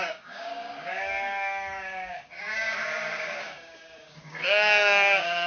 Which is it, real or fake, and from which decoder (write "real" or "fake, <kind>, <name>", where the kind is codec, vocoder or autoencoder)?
fake, codec, DAC